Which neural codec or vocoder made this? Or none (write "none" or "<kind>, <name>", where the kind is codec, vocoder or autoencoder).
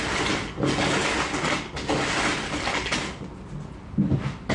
none